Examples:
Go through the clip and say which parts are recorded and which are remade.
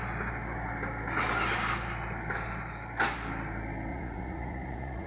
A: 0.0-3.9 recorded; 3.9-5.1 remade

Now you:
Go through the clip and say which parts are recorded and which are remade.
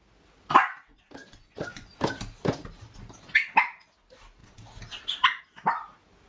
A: 0.0-1.2 recorded; 1.2-1.9 remade; 1.9-6.3 recorded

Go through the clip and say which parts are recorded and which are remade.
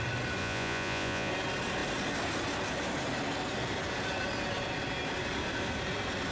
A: 0.0-0.4 recorded; 0.4-1.3 remade; 1.3-6.3 recorded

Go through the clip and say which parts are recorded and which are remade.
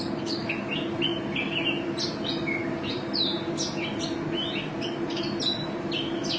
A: 0.0-6.4 recorded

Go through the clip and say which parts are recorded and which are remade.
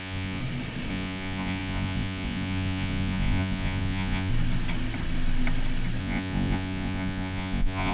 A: 0.0-0.4 remade; 0.4-0.9 recorded; 0.9-4.3 remade; 4.3-6.0 recorded; 6.0-7.9 remade